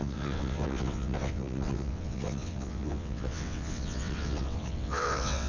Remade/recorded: remade